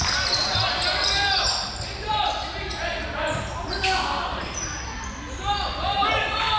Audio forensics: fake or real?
real